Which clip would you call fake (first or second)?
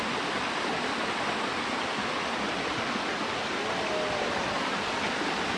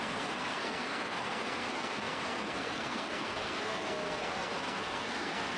second